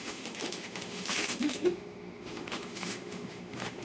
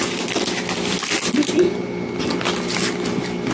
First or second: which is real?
second